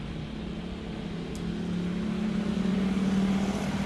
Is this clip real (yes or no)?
yes